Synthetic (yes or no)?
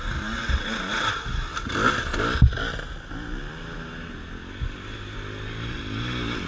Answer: no